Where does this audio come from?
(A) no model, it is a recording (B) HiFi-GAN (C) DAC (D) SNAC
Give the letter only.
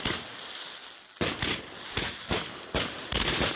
A